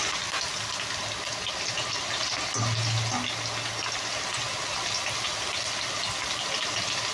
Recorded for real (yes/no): yes